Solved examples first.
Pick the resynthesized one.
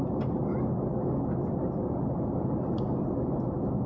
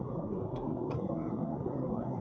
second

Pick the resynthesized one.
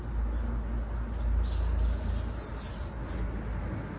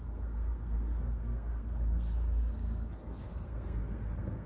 second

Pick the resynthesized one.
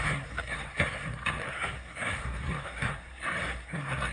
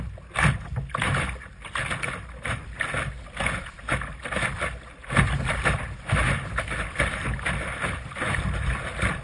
first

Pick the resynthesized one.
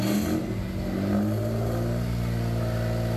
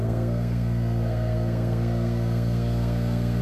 second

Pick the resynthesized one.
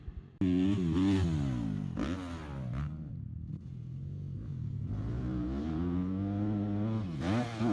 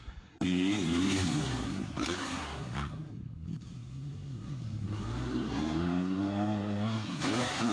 second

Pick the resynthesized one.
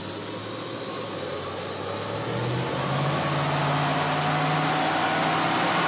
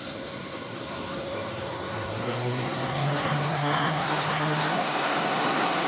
second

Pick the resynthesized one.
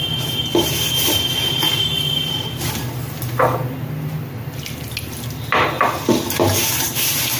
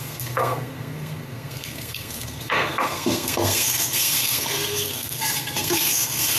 second